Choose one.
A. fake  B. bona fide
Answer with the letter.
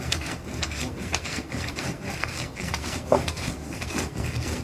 A